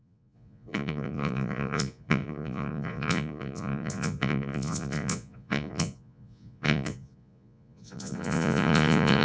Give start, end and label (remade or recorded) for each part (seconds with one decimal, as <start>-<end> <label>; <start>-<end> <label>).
0.0-9.2 remade